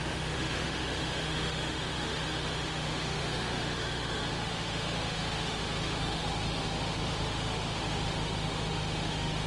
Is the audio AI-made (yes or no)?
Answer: yes